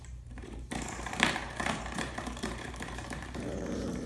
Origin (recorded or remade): remade